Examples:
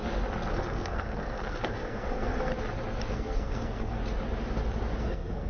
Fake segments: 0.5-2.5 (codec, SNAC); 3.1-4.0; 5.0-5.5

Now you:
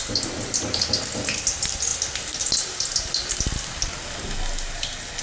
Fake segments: none

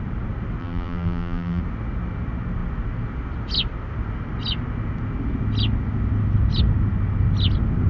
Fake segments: 0.6-1.6 (vocoder, BigVGAN v2)